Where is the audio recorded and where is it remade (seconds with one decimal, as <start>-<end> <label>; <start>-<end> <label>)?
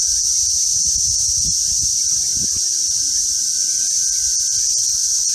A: 0.0-2.3 remade; 2.3-5.3 recorded